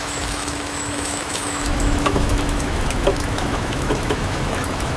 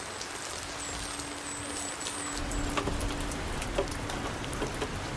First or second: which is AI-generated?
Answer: first